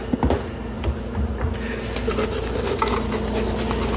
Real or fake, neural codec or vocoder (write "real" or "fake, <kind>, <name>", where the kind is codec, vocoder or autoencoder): real